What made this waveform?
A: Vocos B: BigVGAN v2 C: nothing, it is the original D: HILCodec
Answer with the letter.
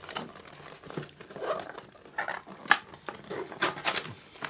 C